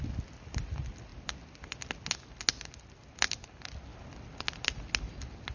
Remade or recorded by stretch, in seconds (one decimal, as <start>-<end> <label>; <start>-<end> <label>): 0.0-5.5 recorded